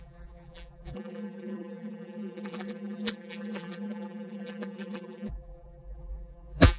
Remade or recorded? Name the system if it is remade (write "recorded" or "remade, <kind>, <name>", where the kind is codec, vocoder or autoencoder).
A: remade, vocoder, BigVGAN v2